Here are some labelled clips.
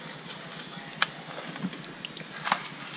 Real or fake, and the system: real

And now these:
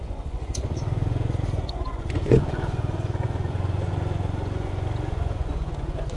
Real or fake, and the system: fake, vocoder, Vocos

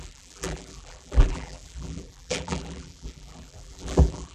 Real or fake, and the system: fake, vocoder, BigVGAN v2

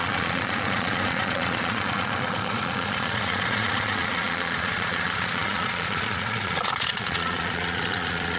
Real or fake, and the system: fake, vocoder, Vocos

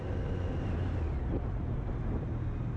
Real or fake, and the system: real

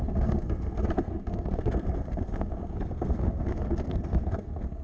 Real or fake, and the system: fake, codec, SNAC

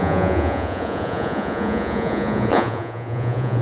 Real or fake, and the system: fake, vocoder, Vocos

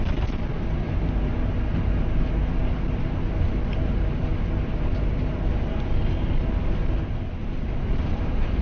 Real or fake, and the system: real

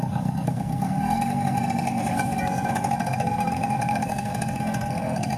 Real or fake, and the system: fake, codec, SNAC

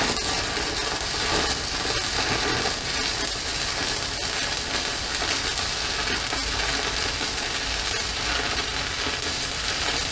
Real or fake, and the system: real